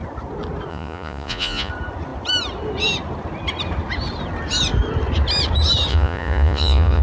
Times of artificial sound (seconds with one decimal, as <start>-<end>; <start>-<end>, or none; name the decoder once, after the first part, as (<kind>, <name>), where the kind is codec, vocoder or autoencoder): 0.7-1.7 (vocoder, Vocos); 5.9-7.0